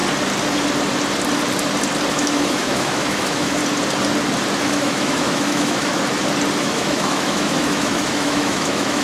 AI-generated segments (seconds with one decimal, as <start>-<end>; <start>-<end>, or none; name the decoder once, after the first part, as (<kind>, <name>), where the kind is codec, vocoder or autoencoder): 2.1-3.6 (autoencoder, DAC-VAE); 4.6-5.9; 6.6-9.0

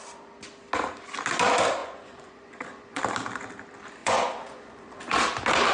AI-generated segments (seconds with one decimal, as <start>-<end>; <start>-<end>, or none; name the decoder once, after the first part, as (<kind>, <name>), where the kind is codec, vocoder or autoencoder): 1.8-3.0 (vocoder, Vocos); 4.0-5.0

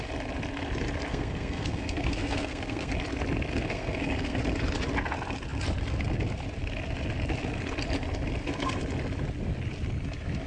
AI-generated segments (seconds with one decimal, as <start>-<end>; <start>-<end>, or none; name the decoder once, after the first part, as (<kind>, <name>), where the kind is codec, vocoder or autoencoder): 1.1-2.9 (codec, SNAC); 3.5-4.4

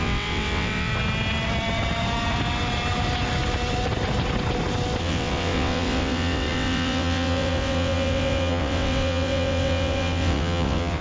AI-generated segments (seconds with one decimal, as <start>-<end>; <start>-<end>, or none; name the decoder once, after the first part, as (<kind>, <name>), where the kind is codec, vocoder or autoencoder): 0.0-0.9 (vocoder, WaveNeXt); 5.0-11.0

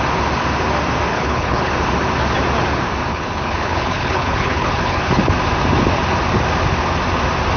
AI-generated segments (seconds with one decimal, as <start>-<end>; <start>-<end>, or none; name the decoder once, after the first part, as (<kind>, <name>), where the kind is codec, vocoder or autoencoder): 1.1-1.7 (codec, HILCodec); 3.1-5.2

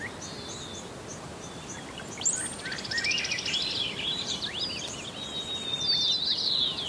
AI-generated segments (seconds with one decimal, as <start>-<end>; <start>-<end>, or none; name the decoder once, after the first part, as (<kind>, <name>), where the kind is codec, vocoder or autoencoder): 1.1-5.2 (vocoder, BigVGAN v2)

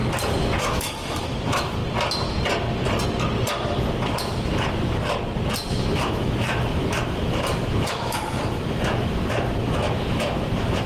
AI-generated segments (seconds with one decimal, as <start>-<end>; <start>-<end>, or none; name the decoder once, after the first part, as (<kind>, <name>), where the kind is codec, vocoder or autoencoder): 0.6-1.8 (autoencoder, DAC-VAE); 5.7-10.9